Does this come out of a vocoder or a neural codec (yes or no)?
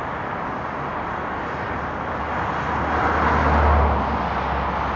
no